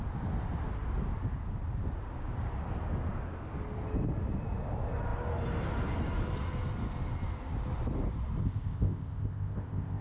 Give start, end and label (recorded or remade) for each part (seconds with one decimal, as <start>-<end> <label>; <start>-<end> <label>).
0.0-8.4 recorded; 8.4-10.0 remade